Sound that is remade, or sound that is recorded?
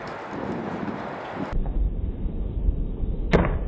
recorded